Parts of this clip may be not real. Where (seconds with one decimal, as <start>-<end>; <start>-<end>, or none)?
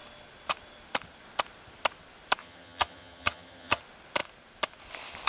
2.4-3.8